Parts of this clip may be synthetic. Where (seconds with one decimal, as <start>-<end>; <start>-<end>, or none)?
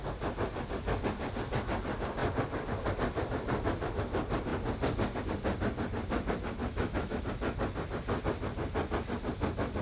6.6-7.2